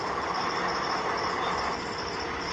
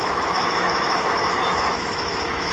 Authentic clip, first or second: first